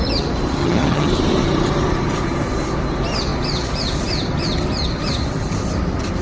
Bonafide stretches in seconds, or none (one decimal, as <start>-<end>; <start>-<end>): 0.0-0.6; 1.1-6.2